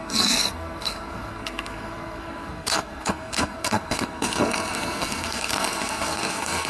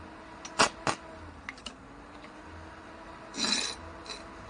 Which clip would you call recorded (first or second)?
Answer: second